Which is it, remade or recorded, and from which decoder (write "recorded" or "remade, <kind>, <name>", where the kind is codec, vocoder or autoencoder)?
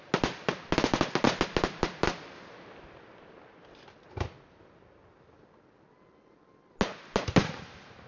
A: recorded